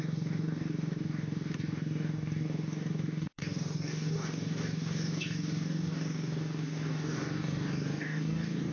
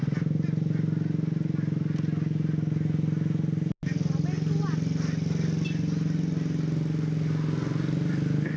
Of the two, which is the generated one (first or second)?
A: first